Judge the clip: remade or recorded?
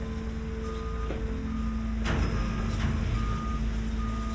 recorded